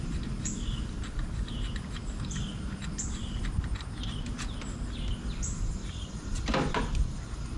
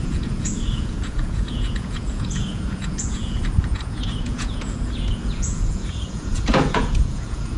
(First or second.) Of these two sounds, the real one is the first